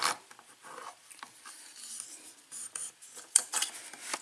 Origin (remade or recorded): remade